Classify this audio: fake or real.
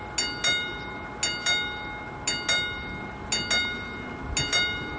real